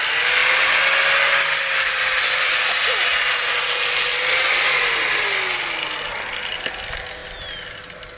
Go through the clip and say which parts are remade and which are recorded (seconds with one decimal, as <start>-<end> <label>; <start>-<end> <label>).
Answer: 0.0-8.2 recorded